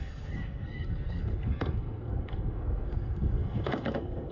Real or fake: fake